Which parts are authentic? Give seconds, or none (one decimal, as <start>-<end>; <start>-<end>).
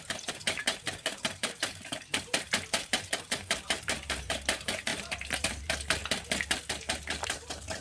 6.0-6.7